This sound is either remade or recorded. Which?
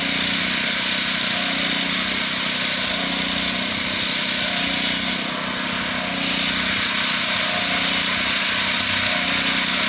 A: recorded